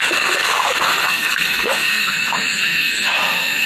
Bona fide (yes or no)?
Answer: no